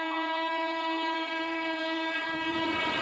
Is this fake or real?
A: fake